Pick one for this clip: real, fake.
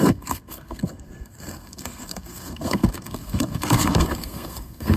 fake